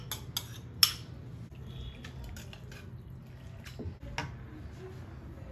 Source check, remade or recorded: recorded